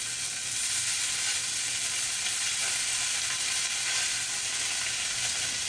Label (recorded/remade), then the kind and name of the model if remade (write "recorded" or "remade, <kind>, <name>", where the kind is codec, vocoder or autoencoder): recorded